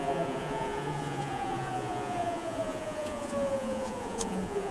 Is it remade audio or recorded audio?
remade